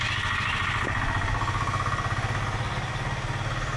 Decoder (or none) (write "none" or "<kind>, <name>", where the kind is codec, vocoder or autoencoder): none